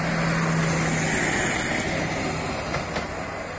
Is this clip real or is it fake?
real